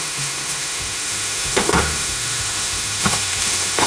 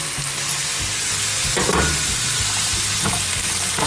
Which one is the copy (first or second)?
first